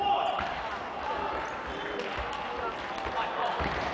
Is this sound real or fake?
real